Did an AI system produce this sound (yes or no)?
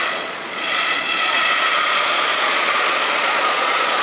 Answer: yes